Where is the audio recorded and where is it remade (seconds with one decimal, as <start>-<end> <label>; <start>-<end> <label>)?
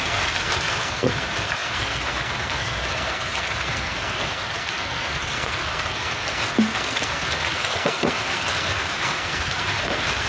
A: 0.0-10.3 remade